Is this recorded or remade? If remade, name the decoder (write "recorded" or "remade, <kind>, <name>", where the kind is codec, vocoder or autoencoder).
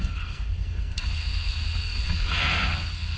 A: remade, codec, SNAC